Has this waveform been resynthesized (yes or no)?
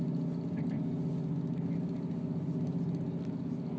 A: no